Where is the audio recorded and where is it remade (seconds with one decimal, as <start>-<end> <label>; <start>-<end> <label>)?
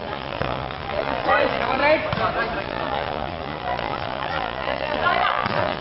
0.0-1.8 remade; 1.8-2.6 recorded; 2.6-5.8 remade